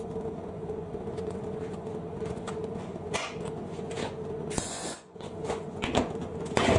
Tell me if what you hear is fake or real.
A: fake